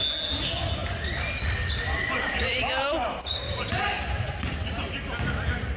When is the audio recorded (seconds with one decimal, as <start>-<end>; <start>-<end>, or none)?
0.0-2.5; 4.7-5.8